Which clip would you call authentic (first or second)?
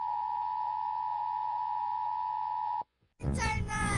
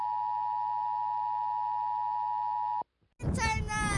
second